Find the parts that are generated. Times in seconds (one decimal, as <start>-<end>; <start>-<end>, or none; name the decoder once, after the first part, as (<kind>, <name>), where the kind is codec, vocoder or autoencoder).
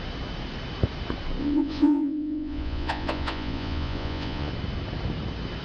1.4-4.5 (vocoder, Vocos)